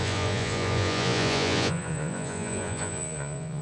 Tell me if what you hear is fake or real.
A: fake